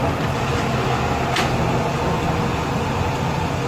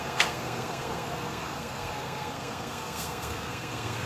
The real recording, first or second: first